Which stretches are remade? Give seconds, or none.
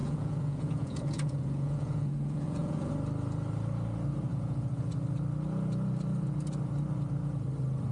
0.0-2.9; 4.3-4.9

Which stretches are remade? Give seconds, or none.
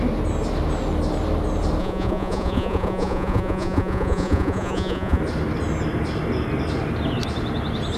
1.8-5.2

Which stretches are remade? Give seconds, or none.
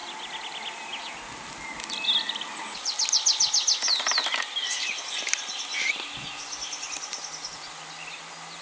none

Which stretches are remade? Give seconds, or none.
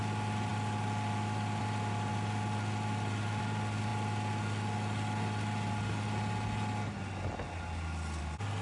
none